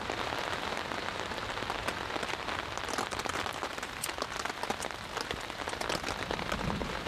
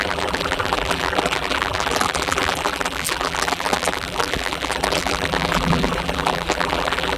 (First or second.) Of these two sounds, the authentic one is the first